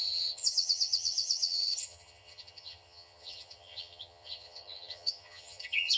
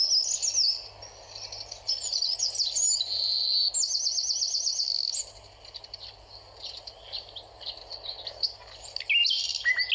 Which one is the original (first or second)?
second